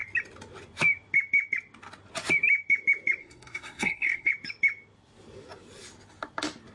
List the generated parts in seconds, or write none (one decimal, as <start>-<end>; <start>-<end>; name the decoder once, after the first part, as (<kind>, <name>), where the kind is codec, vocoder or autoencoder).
3.2-4.3 (codec, SNAC)